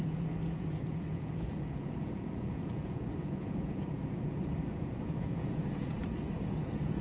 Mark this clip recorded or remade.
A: remade